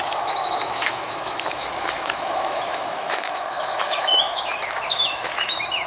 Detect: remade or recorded remade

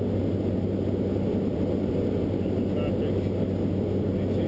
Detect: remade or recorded recorded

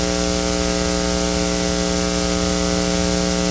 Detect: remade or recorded recorded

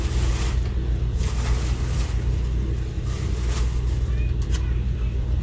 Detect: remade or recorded recorded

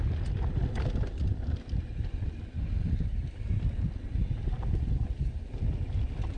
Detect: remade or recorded recorded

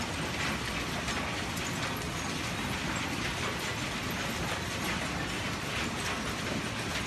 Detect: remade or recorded recorded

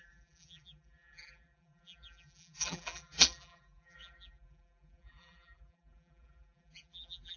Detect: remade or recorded remade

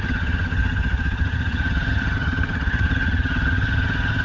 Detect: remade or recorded remade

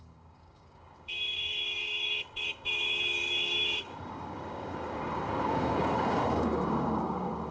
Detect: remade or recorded remade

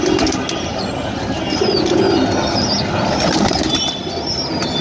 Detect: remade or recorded recorded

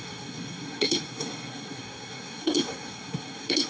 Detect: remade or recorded remade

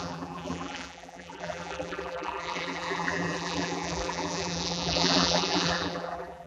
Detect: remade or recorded remade